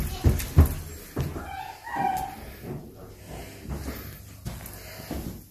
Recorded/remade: recorded